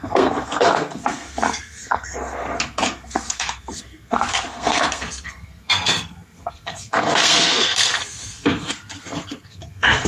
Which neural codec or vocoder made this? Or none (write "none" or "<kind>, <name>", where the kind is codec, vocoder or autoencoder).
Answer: codec, SNAC